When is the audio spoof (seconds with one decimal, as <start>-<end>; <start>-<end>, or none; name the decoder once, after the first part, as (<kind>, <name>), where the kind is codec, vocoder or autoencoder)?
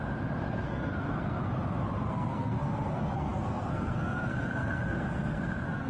0.5-1.5 (codec, SNAC); 2.0-5.9